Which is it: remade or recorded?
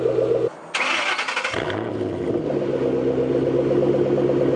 recorded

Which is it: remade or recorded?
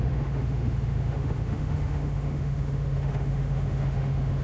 remade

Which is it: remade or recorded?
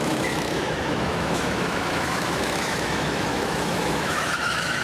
remade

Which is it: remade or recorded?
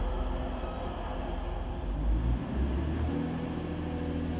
recorded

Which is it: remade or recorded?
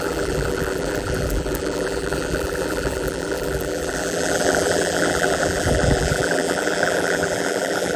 remade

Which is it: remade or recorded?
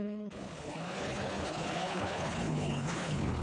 remade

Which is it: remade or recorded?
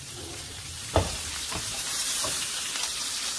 remade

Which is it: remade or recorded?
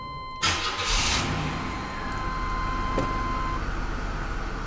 recorded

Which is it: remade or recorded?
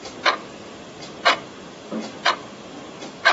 recorded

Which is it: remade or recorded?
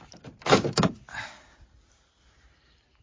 recorded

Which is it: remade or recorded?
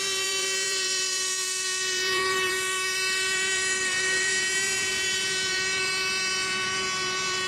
remade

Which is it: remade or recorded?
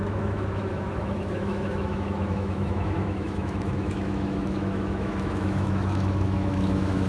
remade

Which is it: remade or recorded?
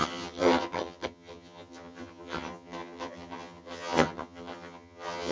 remade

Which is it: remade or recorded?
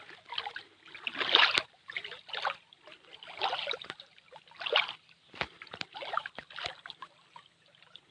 recorded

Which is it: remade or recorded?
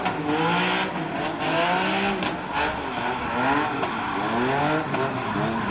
recorded